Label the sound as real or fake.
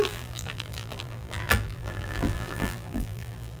fake